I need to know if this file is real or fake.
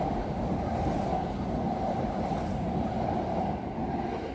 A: real